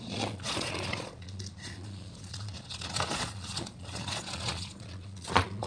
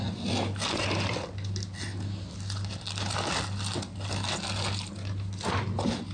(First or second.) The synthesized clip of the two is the first